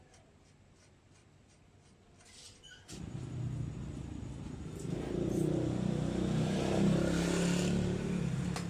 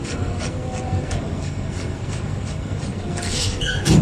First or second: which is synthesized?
second